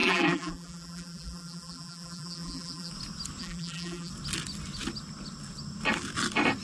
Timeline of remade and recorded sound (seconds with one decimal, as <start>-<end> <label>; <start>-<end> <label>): 0.0-2.9 remade; 2.9-3.4 recorded; 3.4-4.1 remade; 4.1-6.6 recorded